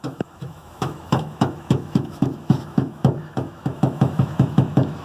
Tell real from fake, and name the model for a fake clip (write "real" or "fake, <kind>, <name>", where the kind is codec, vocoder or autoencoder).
fake, autoencoder, DAC-VAE